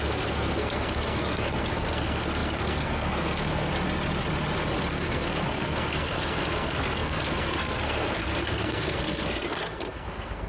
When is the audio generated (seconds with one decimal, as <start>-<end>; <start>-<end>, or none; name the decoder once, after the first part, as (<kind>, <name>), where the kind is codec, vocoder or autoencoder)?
0.0-3.7 (codec, SNAC); 4.9-10.5